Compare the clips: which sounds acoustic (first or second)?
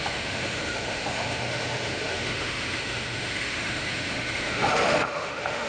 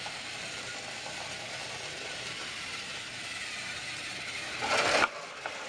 second